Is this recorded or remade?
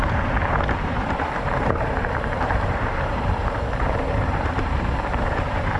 remade